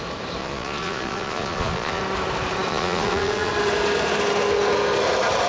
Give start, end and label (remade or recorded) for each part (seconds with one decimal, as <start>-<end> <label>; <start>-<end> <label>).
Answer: 0.0-0.4 recorded; 0.4-2.0 remade; 2.0-2.7 recorded; 2.7-3.5 remade; 3.5-5.5 recorded